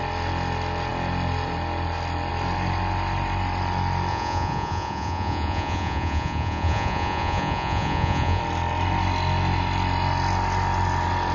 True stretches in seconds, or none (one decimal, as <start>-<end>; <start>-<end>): 0.0-4.1; 8.4-11.3